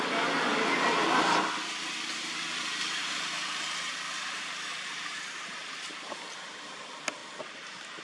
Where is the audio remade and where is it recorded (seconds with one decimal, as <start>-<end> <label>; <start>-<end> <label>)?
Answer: 0.0-8.0 recorded